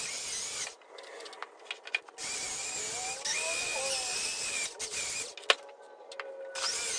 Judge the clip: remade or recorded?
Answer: recorded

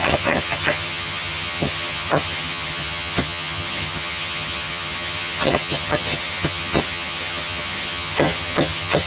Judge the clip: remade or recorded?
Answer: remade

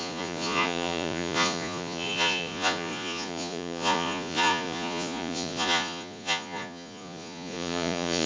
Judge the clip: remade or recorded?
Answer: remade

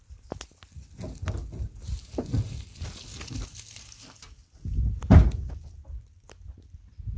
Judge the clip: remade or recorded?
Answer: recorded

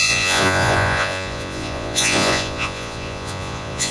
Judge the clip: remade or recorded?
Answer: remade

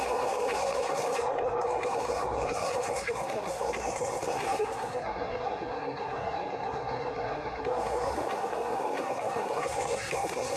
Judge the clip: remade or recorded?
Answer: remade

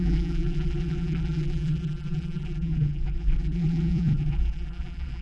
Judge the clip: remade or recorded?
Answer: remade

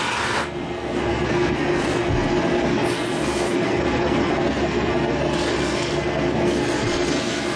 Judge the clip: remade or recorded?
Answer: remade